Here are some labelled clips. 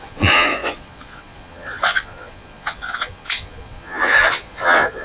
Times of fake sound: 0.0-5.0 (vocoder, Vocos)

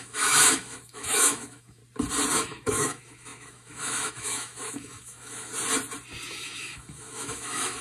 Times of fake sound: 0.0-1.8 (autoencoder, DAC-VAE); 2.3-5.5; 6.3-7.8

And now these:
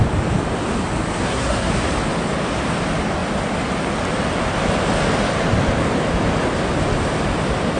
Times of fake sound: 1.2-1.7 (codec, SNAC)

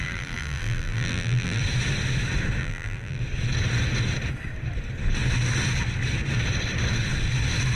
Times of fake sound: 0.0-1.6 (vocoder, BigVGAN v2); 2.6-3.2

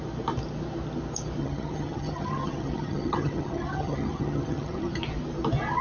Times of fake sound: 1.4-4.9 (vocoder, HiFi-GAN)

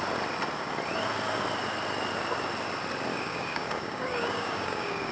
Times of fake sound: 3.1-5.1 (codec, DAC)

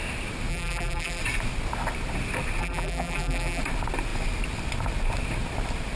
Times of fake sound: 0.5-1.2 (vocoder, BigVGAN v2); 2.6-3.6

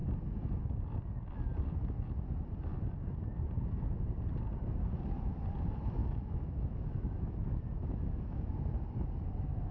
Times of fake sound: 6.0-8.5 (autoencoder, DAC-VAE)